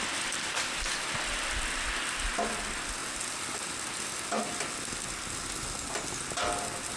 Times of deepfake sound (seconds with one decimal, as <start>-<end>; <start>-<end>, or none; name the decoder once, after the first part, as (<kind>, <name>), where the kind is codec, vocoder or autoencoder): none